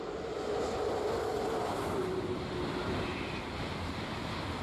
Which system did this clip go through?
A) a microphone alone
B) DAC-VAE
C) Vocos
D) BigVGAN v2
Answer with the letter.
A